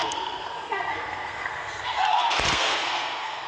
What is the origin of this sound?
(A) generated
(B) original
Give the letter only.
A